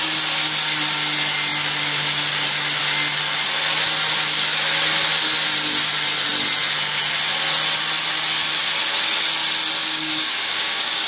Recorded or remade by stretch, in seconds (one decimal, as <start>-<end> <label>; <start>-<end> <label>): 0.0-9.8 recorded; 9.8-11.1 remade